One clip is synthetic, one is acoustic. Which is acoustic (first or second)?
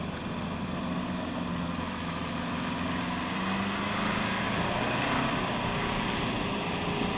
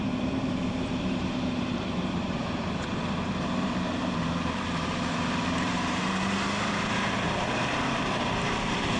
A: first